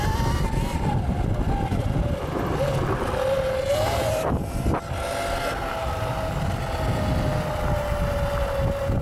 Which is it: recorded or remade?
recorded